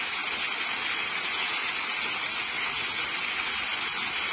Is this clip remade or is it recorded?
recorded